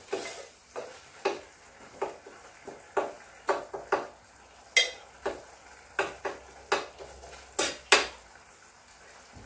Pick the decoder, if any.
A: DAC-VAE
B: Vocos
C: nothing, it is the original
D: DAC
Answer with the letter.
C